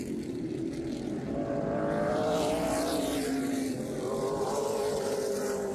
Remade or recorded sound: remade